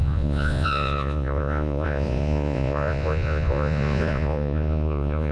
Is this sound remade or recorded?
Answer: remade